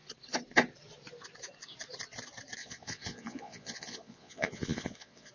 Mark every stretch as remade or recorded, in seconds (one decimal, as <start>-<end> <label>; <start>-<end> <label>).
0.0-2.6 recorded; 2.6-5.3 remade